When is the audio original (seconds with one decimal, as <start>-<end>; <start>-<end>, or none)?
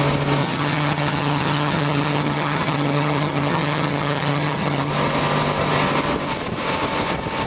0.0-0.4; 4.9-7.5